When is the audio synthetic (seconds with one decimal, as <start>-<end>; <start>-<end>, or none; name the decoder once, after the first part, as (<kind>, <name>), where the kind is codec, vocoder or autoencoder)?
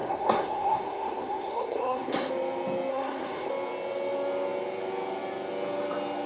0.0-2.3 (codec, SNAC); 2.9-3.5